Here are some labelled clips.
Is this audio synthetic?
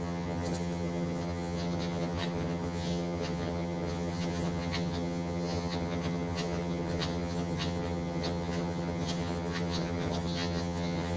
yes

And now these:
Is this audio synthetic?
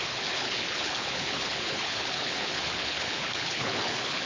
yes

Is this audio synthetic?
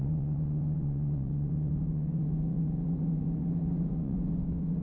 yes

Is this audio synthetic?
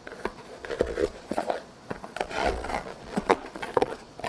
yes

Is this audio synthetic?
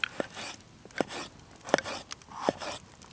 no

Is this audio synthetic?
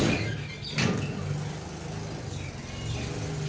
no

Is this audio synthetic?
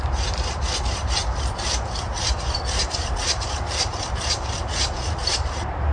yes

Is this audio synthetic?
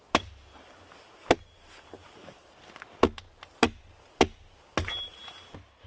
no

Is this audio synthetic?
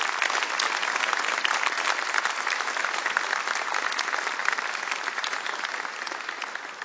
no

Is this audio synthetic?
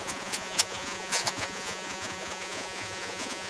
yes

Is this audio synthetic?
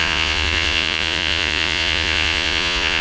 yes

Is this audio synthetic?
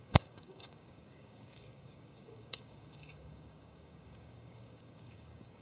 yes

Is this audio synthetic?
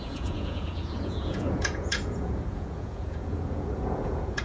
yes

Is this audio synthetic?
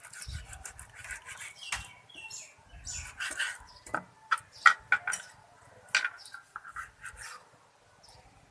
no